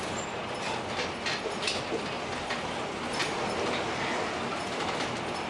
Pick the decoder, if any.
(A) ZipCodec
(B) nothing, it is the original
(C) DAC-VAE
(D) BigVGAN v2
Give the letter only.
B